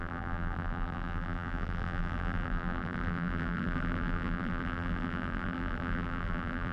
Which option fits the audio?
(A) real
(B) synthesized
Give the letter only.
B